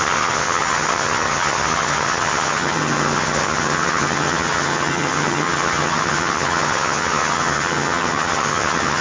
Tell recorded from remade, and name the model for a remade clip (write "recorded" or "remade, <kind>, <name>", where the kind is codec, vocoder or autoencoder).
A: remade, vocoder, HiFi-GAN